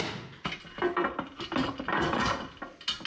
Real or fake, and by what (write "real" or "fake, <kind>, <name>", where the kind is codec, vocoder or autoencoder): real